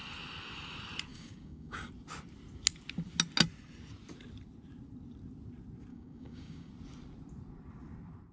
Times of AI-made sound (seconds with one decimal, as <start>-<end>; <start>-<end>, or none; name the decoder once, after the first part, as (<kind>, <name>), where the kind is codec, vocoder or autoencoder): 1.1-1.9 (codec, DAC); 5.9-6.7